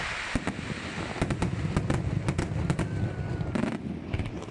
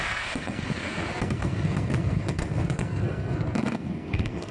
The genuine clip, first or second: first